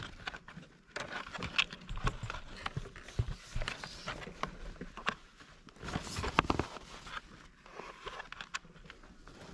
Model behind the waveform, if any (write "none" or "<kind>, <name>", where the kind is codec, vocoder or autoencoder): none